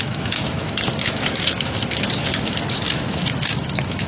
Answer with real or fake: fake